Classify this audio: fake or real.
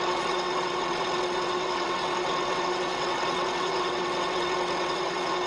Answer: fake